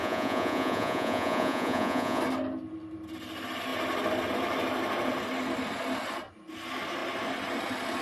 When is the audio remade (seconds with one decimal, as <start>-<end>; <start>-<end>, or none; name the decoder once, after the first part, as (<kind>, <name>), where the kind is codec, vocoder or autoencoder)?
0.0-2.2 (vocoder, Vocos)